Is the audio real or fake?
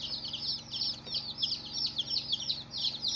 real